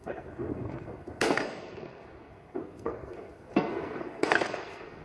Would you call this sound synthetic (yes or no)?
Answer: yes